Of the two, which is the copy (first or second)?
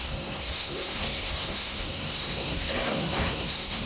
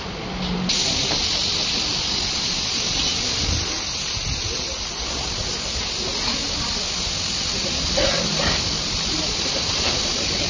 first